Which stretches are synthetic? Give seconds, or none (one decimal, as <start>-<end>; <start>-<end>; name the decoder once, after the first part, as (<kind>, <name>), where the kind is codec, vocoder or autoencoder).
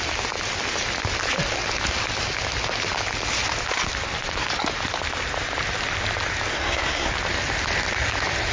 6.5-7.1 (codec, SNAC)